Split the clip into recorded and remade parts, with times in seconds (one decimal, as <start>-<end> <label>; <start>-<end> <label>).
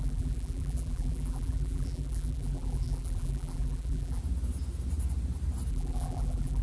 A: 0.0-4.2 remade; 4.2-5.7 recorded; 5.7-6.6 remade